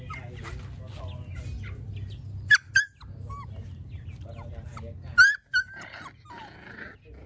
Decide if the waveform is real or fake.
real